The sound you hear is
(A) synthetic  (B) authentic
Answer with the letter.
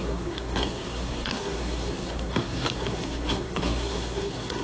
A